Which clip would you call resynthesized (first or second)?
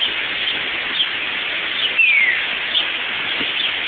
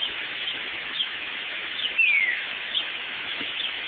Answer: second